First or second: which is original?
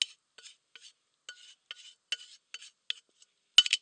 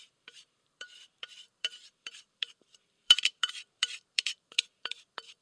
first